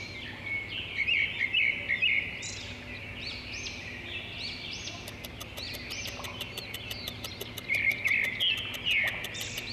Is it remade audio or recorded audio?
recorded